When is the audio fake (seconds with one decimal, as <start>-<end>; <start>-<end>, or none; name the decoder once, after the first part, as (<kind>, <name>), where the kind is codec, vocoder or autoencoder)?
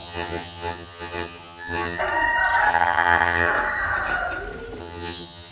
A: 0.0-2.0 (vocoder, HiFi-GAN); 2.7-3.5; 4.8-5.5